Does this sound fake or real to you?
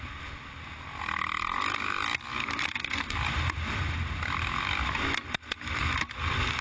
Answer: real